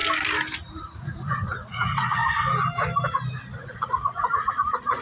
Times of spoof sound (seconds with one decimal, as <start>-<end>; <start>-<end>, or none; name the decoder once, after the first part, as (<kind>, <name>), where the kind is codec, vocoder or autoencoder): 0.7-2.2 (vocoder, Vocos); 3.6-5.0